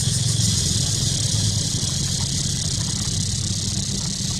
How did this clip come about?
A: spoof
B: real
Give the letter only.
B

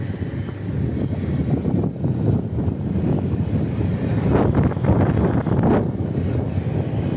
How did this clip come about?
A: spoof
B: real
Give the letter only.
B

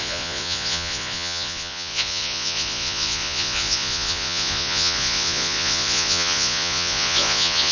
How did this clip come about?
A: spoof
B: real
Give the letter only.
A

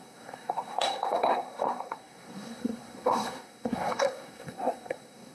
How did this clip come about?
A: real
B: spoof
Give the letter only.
B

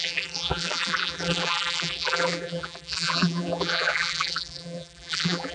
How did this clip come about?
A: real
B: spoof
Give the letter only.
B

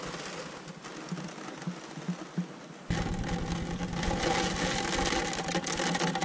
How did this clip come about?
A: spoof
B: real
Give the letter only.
B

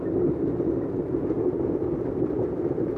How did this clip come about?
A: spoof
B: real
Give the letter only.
B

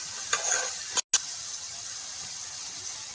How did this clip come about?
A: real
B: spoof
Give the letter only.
A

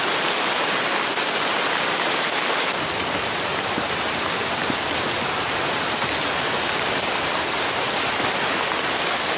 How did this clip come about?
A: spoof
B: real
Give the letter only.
B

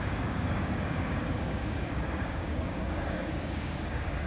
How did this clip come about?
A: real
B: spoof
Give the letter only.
B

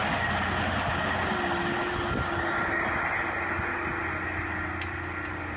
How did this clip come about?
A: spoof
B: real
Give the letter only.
B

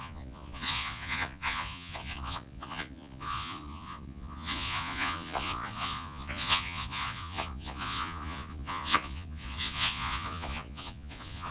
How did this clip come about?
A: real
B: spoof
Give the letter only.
B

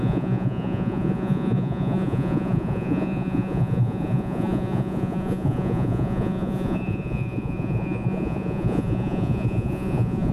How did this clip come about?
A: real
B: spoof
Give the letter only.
B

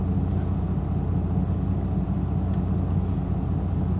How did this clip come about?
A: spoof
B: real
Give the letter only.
B